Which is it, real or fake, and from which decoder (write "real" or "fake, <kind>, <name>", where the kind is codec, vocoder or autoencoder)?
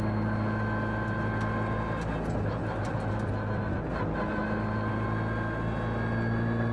real